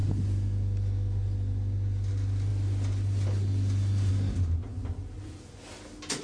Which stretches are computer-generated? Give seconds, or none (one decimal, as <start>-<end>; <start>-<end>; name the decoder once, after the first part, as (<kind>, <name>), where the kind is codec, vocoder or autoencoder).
none